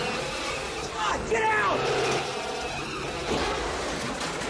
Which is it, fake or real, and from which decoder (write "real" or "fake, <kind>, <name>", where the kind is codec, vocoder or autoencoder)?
real